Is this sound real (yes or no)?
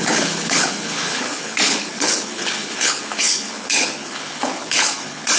no